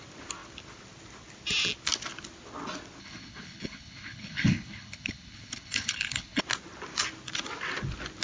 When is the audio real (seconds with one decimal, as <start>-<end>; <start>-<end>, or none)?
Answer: 0.0-3.0; 6.4-8.2